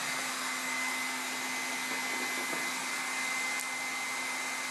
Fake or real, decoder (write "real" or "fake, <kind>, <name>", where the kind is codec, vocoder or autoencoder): real